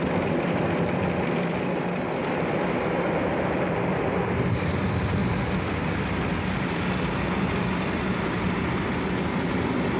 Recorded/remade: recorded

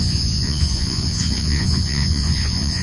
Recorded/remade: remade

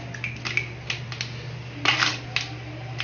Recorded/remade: recorded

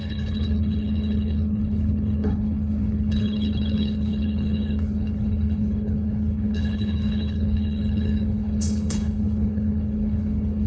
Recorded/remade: remade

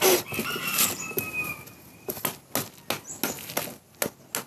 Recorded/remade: recorded